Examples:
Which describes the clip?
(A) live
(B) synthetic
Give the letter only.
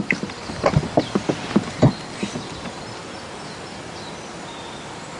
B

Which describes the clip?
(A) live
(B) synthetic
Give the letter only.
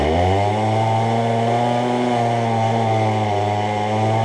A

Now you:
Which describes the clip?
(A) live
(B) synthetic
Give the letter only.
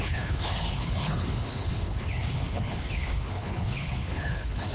B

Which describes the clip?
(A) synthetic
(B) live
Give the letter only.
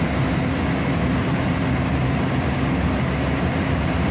B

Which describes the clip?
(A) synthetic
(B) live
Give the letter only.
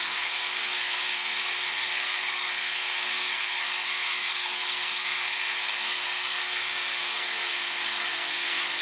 A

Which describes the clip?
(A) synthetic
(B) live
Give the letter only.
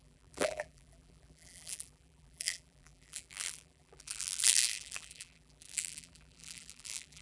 A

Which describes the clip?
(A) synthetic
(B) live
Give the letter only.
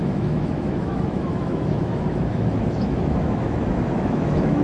A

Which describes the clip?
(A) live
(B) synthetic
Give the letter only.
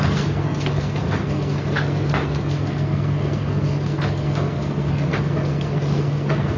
B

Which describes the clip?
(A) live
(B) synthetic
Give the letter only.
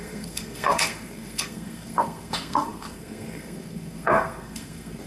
B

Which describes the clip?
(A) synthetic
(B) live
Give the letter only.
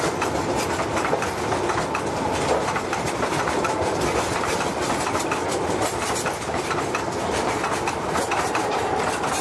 B